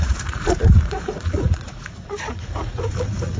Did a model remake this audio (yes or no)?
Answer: yes